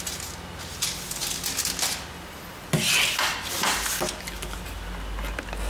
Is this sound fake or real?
real